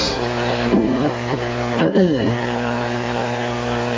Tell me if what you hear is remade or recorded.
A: remade